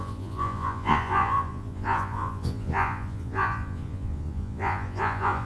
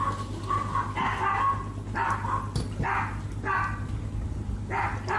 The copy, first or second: first